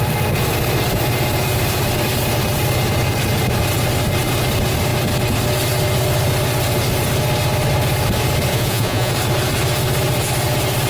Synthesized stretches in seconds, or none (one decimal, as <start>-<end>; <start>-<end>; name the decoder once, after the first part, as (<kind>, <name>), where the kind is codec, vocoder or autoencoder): 8.5-9.1 (vocoder, Vocos)